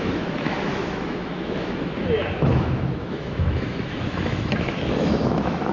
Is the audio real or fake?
fake